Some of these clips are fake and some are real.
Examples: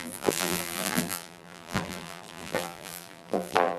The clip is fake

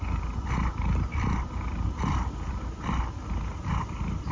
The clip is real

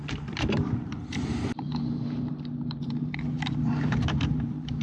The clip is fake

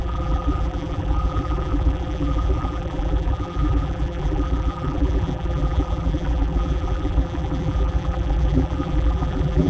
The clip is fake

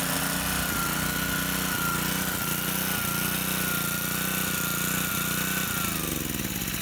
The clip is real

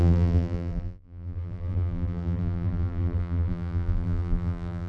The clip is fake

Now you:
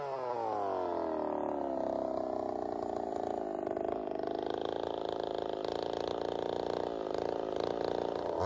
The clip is real